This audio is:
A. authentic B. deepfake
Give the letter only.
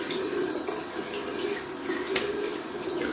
A